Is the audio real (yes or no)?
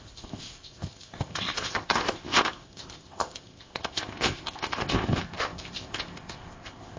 no